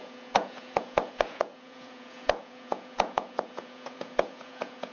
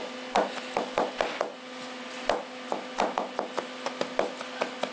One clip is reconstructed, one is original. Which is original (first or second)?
second